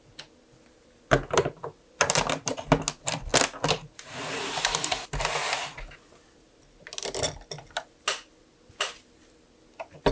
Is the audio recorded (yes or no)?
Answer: yes